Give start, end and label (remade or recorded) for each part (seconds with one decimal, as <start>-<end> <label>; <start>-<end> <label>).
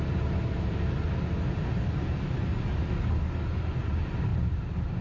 0.0-5.0 recorded